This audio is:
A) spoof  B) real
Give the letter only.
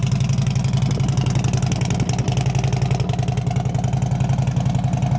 B